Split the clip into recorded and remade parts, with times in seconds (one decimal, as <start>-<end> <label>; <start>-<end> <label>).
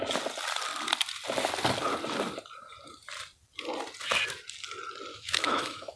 0.0-5.1 recorded; 5.1-6.0 remade